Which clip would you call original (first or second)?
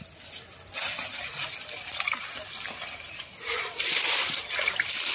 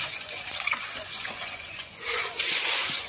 first